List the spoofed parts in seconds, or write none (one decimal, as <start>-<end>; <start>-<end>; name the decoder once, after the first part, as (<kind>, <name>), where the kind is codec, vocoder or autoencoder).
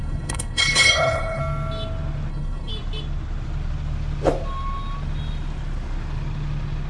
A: 0.0-1.4 (codec, HILCodec); 2.3-2.7